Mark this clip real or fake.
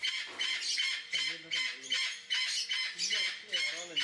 real